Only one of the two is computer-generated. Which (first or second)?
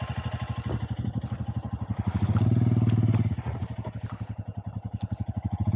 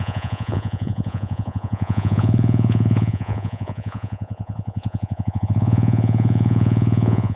second